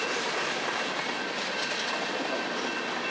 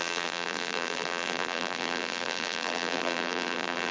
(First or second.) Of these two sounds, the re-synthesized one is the second